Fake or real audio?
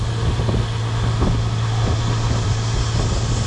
real